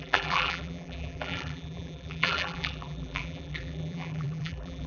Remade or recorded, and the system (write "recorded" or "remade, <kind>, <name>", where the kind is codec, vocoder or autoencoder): remade, vocoder, BigVGAN v2